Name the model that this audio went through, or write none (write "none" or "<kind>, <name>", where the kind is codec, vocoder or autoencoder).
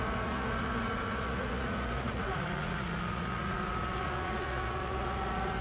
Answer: vocoder, Vocos